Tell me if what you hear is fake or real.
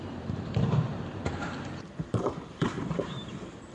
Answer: fake